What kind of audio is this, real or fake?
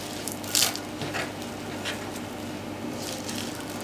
real